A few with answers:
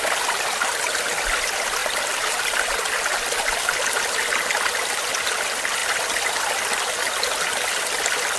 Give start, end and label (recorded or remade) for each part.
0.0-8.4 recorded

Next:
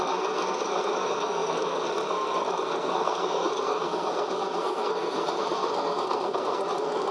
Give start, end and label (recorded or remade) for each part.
0.0-7.1 remade